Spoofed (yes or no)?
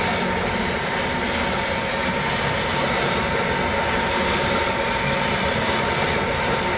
no